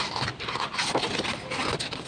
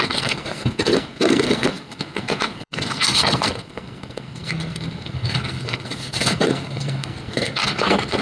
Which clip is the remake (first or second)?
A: second